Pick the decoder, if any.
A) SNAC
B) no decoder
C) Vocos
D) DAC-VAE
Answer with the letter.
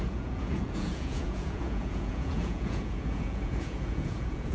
C